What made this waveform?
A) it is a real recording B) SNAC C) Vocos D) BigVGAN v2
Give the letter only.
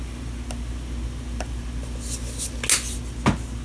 A